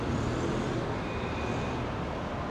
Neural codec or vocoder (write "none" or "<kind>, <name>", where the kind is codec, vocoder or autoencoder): none